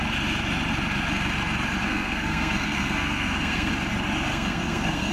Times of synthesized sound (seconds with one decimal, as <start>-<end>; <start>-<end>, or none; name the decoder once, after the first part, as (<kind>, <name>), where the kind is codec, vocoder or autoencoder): 1.8-3.7 (codec, SNAC); 4.3-5.1